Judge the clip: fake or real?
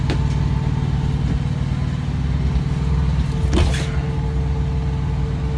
real